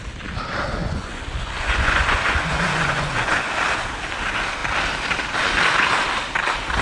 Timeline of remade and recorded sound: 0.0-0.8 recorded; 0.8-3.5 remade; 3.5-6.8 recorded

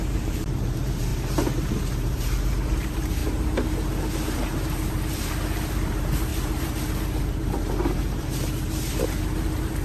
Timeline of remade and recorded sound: 0.0-3.2 remade; 3.2-4.1 recorded; 4.1-9.8 remade

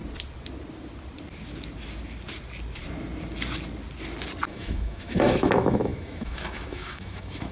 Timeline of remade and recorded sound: 0.0-4.5 recorded; 4.5-7.5 remade

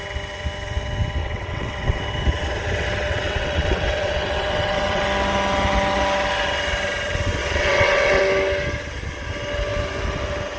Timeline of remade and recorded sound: 0.0-1.2 recorded; 1.2-2.0 remade; 2.0-3.1 recorded; 3.1-5.0 remade; 5.0-7.4 recorded; 7.4-8.2 remade; 8.2-10.6 recorded

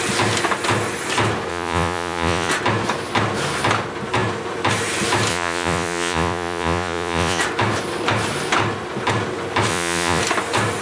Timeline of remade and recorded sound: 0.0-1.5 recorded; 1.5-2.5 remade; 2.5-5.3 recorded; 5.3-7.4 remade; 7.4-9.7 recorded; 9.7-10.2 remade; 10.2-10.8 recorded